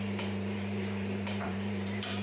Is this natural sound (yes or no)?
no